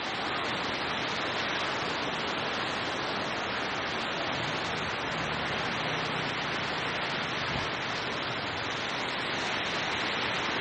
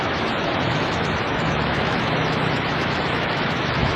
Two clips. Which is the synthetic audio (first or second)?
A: second